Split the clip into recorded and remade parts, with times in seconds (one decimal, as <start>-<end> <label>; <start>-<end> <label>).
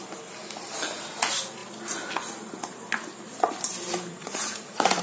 0.0-4.1 recorded; 4.1-5.0 remade